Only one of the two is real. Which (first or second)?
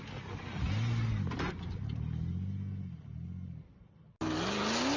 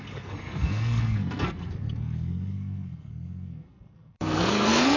first